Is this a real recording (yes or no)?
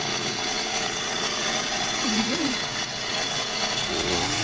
no